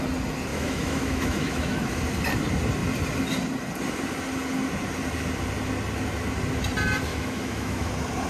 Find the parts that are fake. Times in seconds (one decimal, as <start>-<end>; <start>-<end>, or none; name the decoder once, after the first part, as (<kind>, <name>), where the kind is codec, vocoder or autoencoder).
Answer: 0.5-2.0 (autoencoder, DAC-VAE); 7.1-7.9